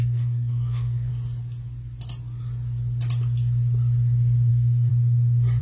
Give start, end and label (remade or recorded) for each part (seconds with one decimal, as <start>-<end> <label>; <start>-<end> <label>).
0.0-1.1 remade; 1.1-4.5 recorded; 4.5-4.9 remade; 4.9-5.6 recorded